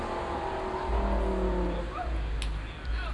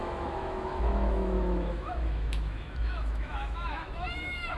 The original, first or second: first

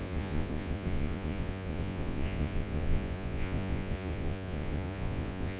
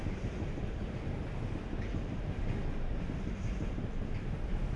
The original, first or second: second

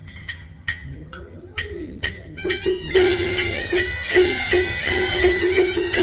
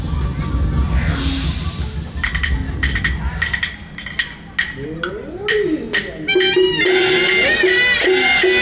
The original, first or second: second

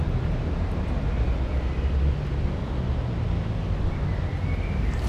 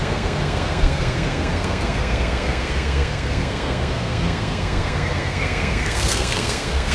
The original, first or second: first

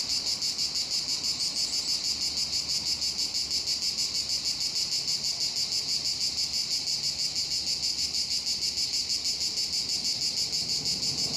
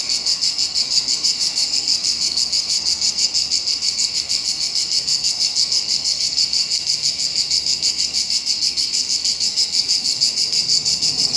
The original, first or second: first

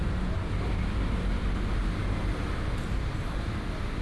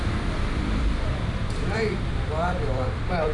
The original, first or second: first